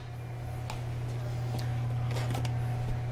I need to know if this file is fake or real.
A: real